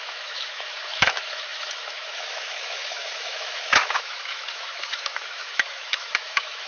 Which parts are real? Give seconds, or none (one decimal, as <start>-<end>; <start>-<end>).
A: none